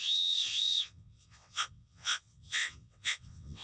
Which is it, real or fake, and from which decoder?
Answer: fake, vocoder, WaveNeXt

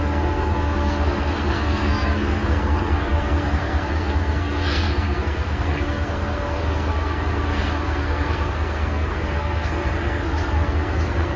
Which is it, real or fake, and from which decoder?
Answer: fake, codec, SNAC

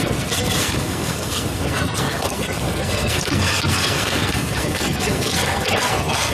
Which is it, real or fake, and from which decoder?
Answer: fake, codec, SNAC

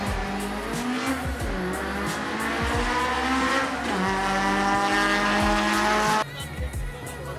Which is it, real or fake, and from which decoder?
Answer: real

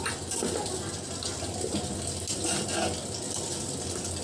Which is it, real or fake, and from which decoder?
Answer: real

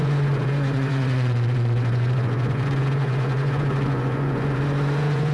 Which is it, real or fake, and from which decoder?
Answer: fake, vocoder, Vocos